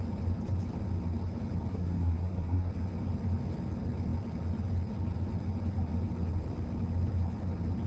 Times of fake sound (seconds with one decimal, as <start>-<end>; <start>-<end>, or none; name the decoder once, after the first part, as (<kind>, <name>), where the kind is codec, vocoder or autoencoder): 1.7-2.7 (codec, SNAC)